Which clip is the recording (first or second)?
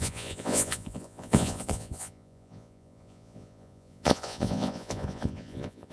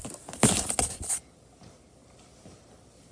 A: second